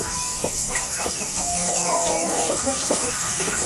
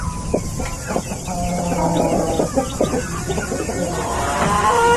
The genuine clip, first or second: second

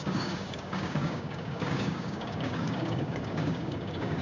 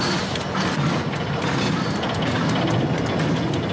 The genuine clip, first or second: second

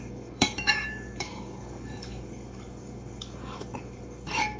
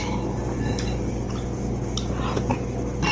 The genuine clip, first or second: second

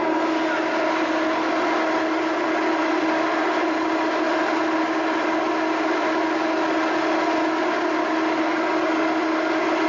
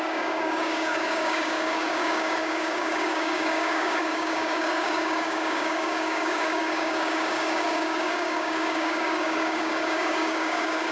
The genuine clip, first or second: first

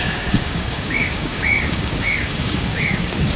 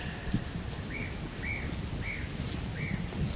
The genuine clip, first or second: second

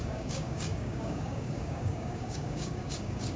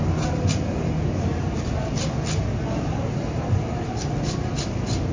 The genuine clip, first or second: second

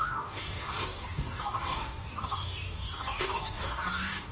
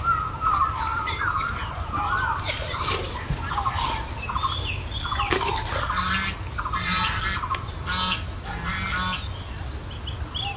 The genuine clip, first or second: second